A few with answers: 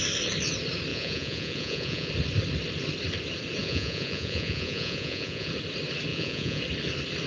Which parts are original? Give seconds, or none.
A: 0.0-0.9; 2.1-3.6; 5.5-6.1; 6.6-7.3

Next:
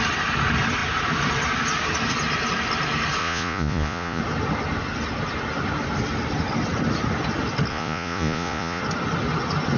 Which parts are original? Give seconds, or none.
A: 0.0-3.2; 4.2-7.7; 8.8-9.8